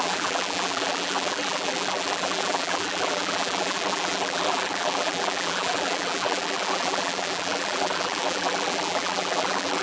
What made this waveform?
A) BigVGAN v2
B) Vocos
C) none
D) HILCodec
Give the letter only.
A